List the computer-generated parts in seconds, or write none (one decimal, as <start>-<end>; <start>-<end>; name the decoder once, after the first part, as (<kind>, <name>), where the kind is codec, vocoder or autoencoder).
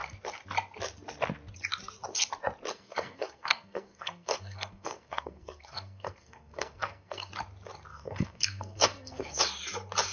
2.7-7.3 (codec, SNAC); 7.9-9.4